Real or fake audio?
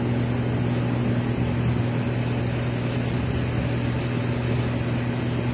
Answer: real